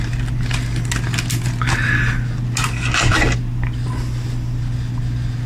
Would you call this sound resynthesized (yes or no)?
no